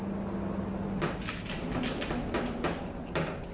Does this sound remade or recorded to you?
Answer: recorded